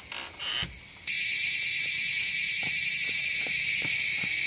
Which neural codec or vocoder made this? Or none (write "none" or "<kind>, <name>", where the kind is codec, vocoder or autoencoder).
none